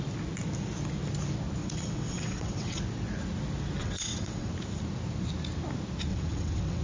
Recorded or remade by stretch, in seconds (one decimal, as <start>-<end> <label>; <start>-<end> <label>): 0.0-1.6 recorded; 1.6-2.8 remade; 2.8-3.8 recorded; 3.8-4.5 remade; 4.5-6.1 recorded; 6.1-6.8 remade